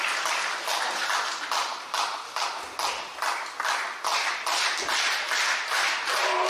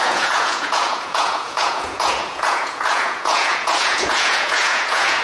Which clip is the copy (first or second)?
second